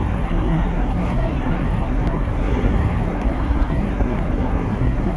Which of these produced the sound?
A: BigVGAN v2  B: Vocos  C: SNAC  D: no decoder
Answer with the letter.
C